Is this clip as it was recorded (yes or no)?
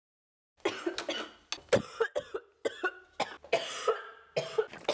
yes